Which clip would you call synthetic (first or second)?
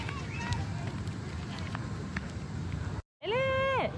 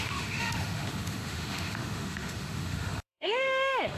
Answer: second